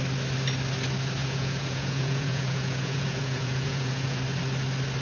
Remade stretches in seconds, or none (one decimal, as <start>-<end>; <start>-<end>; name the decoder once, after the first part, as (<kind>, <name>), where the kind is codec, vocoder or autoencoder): 1.2-4.2 (vocoder, Vocos)